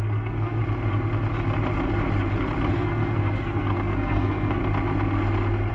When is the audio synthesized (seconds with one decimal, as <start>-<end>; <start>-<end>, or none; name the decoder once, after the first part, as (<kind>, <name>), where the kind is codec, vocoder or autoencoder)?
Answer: 0.0-0.6 (codec, SNAC); 2.7-4.6